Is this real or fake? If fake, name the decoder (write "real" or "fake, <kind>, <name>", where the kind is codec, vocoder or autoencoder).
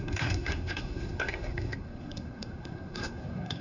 fake, codec, SNAC